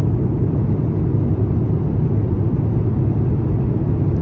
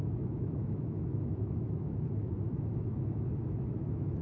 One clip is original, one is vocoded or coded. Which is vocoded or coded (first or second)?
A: second